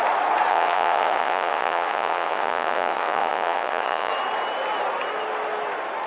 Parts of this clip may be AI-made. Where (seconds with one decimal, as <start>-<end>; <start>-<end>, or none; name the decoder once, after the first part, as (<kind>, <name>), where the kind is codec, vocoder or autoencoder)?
0.5-4.1 (vocoder, Vocos)